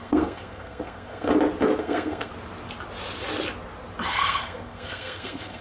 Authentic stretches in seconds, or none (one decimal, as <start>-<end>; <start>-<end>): 1.3-1.8; 2.3-4.1

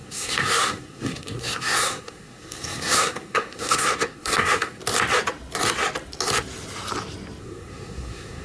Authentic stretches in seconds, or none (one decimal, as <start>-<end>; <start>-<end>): 4.8-7.4

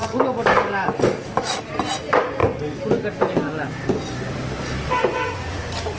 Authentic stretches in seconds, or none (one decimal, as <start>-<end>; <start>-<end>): 1.6-6.0

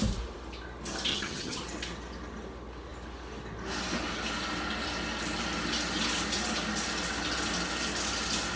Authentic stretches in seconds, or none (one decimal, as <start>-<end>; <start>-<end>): 0.0-1.1; 1.6-8.6

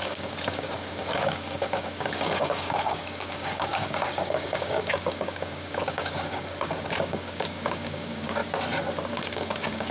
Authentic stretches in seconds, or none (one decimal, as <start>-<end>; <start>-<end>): 8.4-9.1